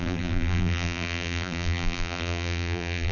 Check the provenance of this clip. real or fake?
fake